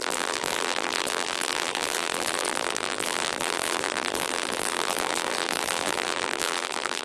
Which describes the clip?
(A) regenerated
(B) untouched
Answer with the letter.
A